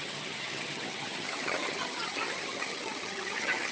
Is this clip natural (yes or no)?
no